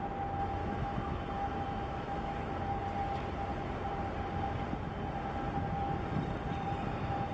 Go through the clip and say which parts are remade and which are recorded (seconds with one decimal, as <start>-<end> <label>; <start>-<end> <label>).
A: 0.0-0.6 recorded; 0.6-2.8 remade; 2.8-7.3 recorded